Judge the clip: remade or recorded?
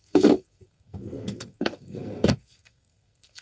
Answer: remade